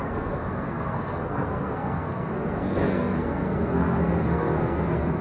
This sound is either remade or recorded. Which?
remade